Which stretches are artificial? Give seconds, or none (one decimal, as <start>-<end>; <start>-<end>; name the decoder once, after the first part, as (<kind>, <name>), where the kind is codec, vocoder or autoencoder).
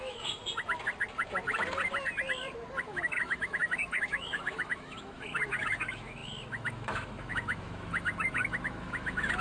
0.0-0.4 (autoencoder, DAC-VAE); 2.8-9.4